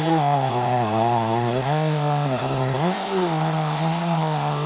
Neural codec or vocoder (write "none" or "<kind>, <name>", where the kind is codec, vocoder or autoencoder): codec, ZipCodec